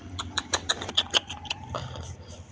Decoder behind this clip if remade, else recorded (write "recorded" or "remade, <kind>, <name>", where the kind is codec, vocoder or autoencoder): remade, vocoder, BigVGAN v2